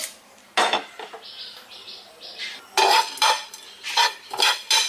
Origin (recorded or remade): recorded